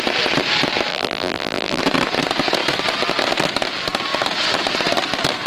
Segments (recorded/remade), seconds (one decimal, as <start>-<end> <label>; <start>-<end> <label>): 0.0-0.9 recorded; 0.9-1.8 remade; 1.8-5.5 recorded